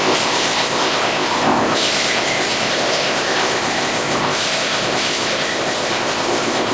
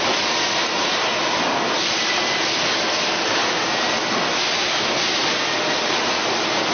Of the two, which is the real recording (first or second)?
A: second